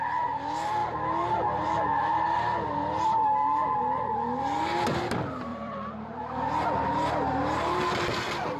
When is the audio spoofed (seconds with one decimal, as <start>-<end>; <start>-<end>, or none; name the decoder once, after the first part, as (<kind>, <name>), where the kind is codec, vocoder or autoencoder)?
5.5-6.2 (vocoder, BigVGAN v2)